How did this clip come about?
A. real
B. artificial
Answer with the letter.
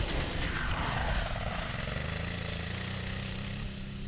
A